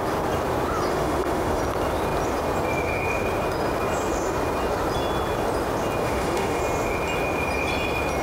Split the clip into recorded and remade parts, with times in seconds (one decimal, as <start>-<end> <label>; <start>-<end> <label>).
0.0-0.9 recorded; 0.9-1.6 remade; 1.6-6.0 recorded; 6.0-6.6 remade; 6.6-8.2 recorded